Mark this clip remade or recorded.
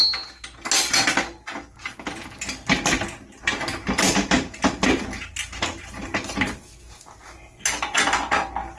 recorded